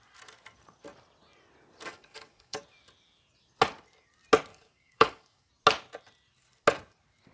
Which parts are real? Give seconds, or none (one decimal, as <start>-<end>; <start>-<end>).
0.0-1.9; 2.6-4.5; 5.5-7.3